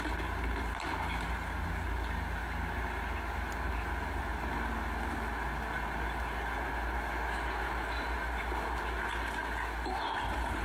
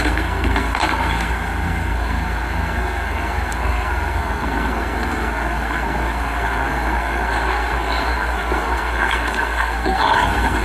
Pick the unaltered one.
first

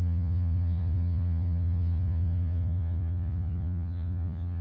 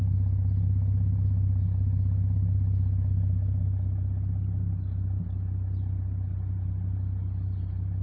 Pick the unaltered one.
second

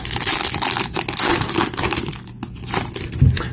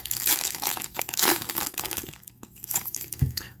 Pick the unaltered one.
first